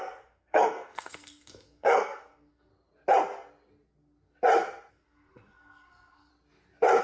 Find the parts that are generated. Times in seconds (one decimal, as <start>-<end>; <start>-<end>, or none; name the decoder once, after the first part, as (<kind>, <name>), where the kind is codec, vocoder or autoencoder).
0.0-2.7 (codec, SNAC); 4.9-6.3